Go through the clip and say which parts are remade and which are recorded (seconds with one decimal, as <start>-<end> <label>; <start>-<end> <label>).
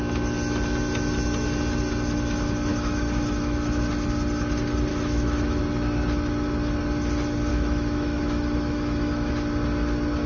0.0-2.7 recorded; 2.7-3.9 remade; 3.9-4.9 recorded; 4.9-5.6 remade; 5.6-7.5 recorded; 7.5-9.3 remade; 9.3-10.3 recorded